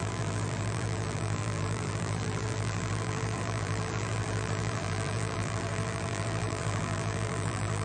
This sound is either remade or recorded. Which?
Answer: remade